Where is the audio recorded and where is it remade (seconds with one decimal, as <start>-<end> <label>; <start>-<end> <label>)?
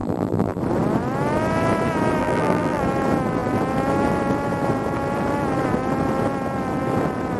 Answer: 0.0-0.6 remade; 0.6-2.2 recorded; 2.2-2.8 remade; 2.8-7.4 recorded